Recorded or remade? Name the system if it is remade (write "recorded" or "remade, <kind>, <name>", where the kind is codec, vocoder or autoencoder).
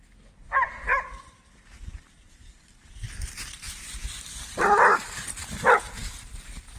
recorded